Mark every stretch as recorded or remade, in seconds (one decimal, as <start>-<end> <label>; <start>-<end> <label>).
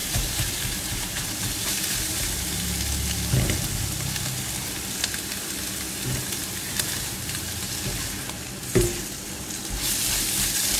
0.0-2.3 remade; 2.3-6.4 recorded; 6.4-7.4 remade; 7.4-10.8 recorded